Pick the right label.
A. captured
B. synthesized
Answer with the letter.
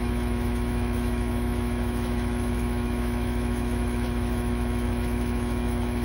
B